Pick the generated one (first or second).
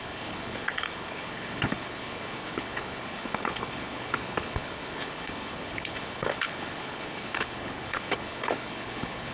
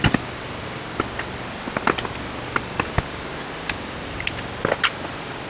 first